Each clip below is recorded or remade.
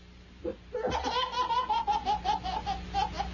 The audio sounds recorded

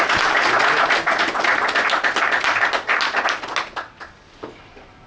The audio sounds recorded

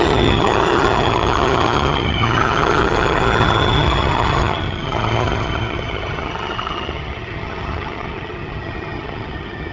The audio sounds remade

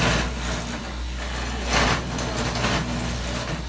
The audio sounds recorded